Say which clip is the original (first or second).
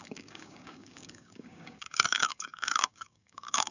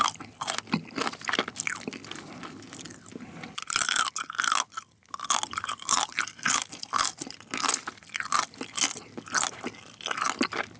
second